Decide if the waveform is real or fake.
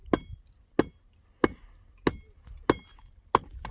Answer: real